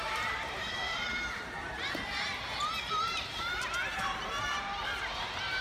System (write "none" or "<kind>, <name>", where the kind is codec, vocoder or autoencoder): vocoder, BigVGAN v2